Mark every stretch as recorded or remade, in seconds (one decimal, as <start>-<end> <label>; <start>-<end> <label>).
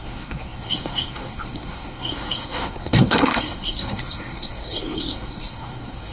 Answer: 0.0-6.1 remade